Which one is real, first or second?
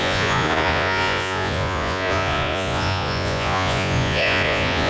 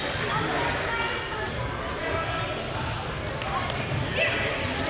second